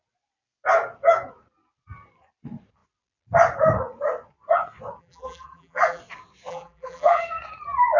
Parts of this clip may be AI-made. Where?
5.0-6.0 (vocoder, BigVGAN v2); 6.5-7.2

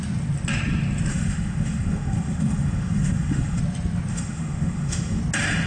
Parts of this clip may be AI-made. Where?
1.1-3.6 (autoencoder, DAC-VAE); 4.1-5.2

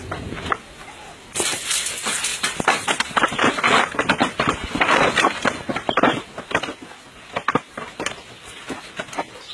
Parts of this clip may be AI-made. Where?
2.3-3.4 (vocoder, BigVGAN v2); 4.2-4.8